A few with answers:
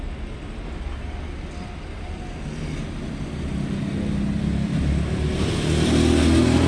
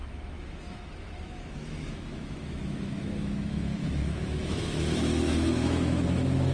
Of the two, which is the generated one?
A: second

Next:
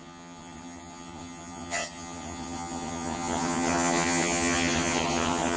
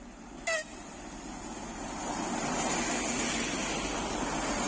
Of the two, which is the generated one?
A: first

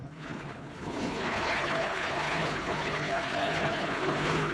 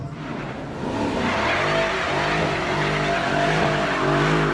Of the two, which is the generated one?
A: first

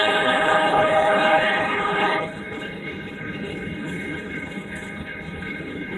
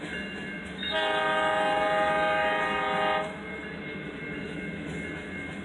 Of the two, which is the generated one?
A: first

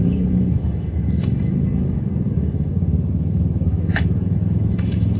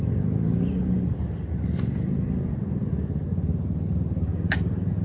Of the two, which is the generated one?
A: first